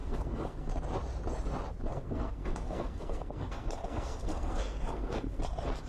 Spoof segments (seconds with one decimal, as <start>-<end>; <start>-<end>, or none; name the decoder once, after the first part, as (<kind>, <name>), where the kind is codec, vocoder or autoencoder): 0.0-0.7 (codec, SNAC); 1.9-5.4